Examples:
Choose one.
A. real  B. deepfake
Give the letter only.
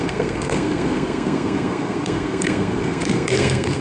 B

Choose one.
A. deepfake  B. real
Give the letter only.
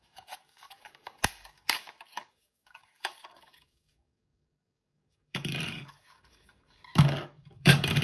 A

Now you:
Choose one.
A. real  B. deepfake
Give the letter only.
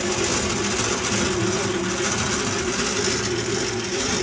A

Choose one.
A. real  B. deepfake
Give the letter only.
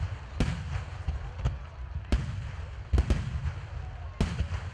A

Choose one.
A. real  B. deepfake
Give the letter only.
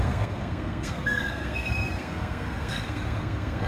B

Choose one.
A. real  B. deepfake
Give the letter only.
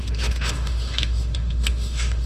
B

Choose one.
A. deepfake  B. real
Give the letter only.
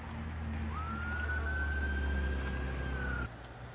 B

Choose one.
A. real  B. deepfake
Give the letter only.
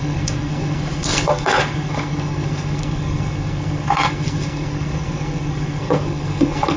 B